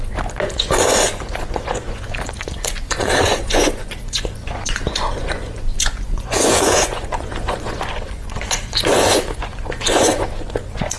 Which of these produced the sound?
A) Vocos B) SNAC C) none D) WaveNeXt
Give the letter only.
A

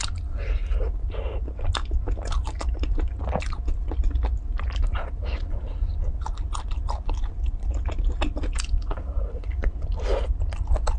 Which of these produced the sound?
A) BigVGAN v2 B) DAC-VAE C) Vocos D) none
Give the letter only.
D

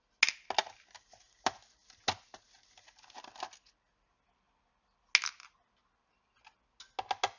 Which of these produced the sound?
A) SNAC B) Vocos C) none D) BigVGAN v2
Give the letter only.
C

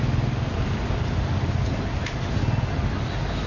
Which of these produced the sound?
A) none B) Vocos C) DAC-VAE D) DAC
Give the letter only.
A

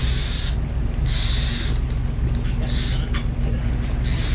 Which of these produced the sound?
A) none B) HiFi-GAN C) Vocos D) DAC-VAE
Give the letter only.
A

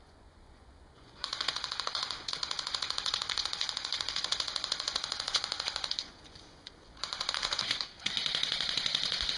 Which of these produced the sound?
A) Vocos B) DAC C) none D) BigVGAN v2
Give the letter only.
A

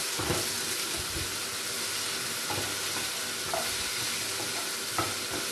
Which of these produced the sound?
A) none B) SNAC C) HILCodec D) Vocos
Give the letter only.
A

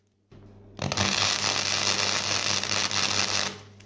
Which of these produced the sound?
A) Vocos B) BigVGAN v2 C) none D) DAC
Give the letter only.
C